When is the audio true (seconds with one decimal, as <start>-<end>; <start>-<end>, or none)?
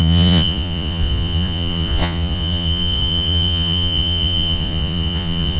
none